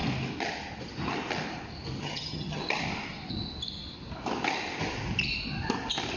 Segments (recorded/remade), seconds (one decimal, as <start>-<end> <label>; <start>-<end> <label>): 0.0-2.0 recorded; 2.0-2.6 remade; 2.6-6.2 recorded